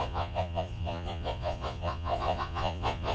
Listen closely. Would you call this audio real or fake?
fake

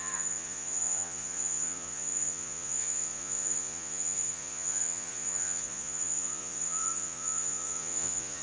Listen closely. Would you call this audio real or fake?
fake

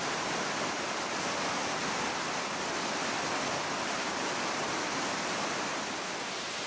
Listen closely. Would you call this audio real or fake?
real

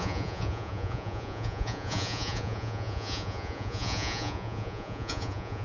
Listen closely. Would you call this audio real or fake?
fake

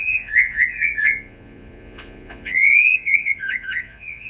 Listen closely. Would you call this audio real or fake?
fake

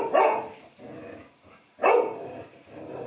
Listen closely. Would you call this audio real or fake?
real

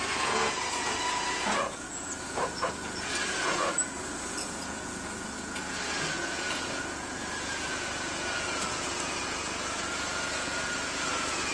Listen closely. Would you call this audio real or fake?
fake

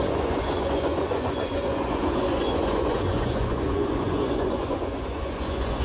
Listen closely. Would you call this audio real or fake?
fake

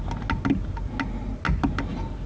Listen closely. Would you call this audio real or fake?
real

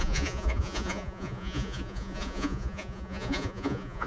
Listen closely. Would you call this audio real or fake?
fake